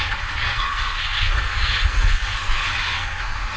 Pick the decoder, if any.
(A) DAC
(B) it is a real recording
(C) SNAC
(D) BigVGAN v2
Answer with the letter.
C